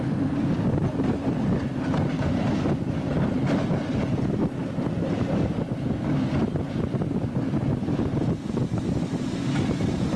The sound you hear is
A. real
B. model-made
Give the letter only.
B